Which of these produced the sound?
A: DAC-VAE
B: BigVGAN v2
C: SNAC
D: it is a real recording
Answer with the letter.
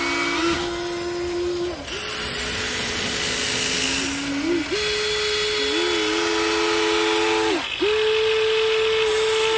D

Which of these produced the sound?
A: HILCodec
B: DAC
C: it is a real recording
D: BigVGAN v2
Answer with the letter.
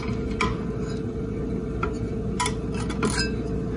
C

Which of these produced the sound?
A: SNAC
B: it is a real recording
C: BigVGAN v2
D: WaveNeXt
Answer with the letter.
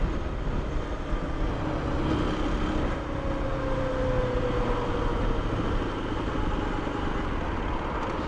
B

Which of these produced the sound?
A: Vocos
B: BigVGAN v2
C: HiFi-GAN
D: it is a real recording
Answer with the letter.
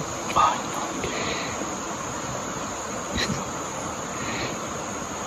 D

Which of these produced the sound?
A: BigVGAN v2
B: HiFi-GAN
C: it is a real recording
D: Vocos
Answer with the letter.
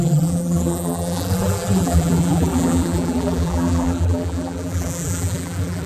A